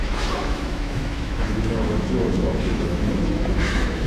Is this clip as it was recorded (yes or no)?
no